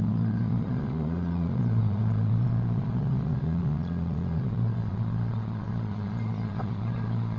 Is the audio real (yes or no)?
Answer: no